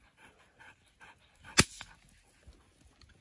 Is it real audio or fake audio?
real